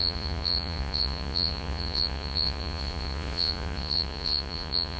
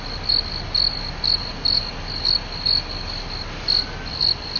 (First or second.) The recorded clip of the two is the second